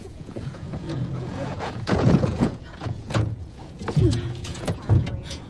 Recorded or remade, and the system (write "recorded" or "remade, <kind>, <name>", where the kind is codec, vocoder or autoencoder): remade, vocoder, Vocos